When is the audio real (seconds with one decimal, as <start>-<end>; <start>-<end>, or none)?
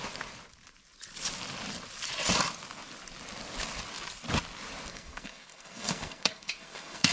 0.0-4.9